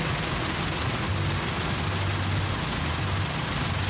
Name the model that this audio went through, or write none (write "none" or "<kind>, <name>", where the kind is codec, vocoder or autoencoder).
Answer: none